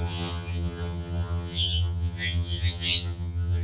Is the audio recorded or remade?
remade